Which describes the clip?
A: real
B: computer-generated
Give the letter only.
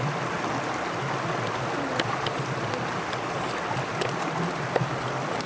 A